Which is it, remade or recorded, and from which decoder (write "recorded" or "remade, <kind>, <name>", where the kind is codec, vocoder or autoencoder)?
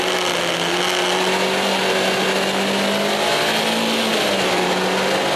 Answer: recorded